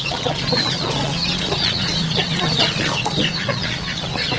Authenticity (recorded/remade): remade